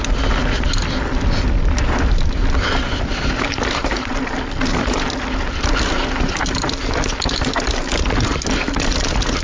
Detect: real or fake real